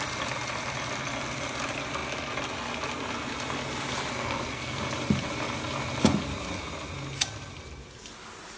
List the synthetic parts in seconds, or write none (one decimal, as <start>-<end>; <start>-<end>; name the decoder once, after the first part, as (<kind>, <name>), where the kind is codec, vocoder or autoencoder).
4.1-4.8 (codec, SNAC)